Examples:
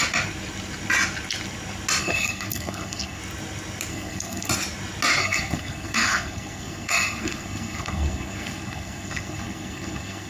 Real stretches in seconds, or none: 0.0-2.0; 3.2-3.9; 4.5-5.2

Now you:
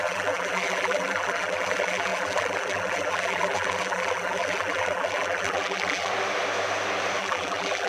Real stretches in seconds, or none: 6.1-7.2

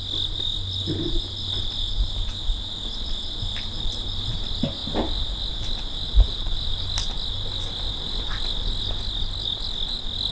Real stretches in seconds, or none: 0.0-10.3

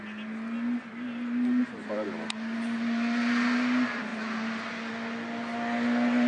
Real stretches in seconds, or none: 0.0-6.3

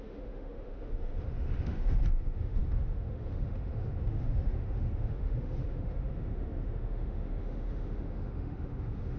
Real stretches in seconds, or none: none

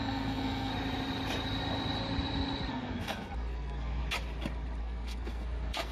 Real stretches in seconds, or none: 0.7-2.7; 4.0-4.8

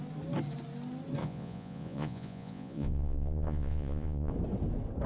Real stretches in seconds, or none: 0.0-1.2; 4.3-5.1

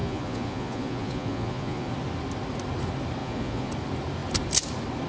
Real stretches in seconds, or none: 1.9-3.2; 3.7-5.1